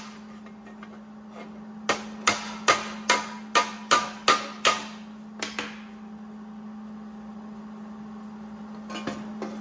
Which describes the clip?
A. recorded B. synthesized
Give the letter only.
A